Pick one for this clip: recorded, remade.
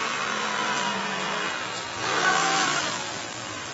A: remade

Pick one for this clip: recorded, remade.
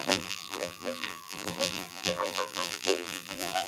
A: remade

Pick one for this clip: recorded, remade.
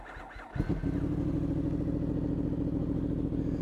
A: recorded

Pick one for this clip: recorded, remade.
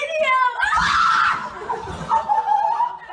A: recorded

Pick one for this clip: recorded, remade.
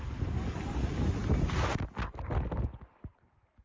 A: recorded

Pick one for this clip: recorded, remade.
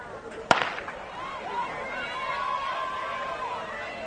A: remade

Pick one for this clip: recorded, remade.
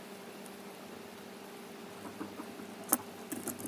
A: recorded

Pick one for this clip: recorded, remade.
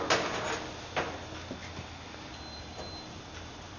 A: recorded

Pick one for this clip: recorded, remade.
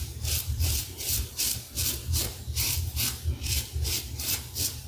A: remade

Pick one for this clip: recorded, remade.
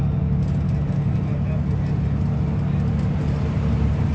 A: recorded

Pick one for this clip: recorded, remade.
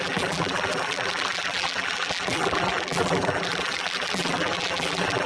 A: remade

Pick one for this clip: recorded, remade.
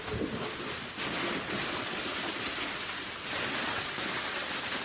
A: recorded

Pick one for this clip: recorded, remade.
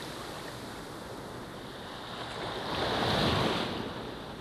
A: recorded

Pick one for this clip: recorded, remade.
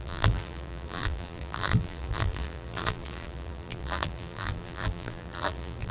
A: remade